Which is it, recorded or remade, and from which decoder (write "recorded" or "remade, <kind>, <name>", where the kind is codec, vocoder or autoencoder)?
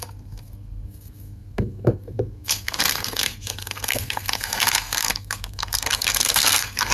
remade, codec, SNAC